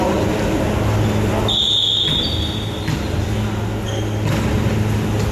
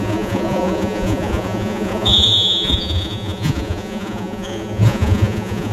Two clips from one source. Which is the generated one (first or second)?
second